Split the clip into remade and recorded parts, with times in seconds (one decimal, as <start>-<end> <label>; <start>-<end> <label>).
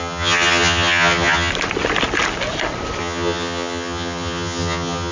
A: 0.0-1.5 remade; 1.5-3.0 recorded; 3.0-5.1 remade